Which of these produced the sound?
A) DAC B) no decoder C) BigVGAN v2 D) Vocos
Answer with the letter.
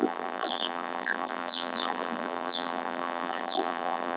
C